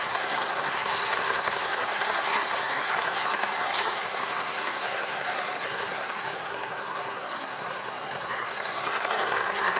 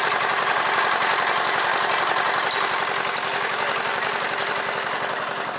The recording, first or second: second